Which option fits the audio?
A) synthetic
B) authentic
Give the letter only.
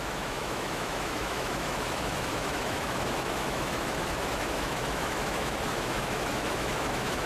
A